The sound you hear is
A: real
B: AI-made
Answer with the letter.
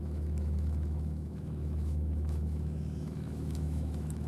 B